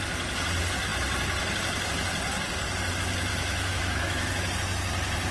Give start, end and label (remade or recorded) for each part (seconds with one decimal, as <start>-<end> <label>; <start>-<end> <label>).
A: 0.0-3.3 recorded; 3.3-4.5 remade; 4.5-5.3 recorded